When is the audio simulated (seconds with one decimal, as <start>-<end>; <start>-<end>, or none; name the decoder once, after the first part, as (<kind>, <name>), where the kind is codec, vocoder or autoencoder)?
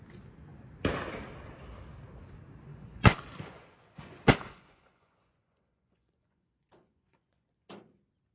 2.7-7.7 (vocoder, Vocos)